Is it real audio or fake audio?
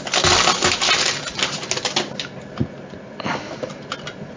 real